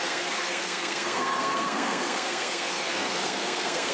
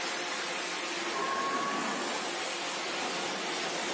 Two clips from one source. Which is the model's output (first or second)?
first